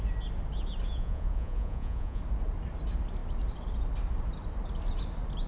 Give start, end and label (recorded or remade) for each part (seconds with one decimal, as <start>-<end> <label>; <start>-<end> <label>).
0.0-0.9 recorded; 0.9-2.2 remade; 2.2-5.5 recorded